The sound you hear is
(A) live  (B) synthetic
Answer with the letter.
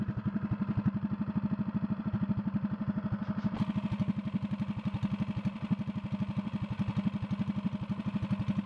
A